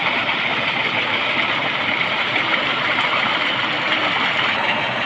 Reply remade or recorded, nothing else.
recorded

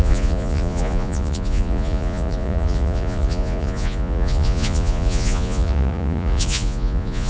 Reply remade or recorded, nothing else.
remade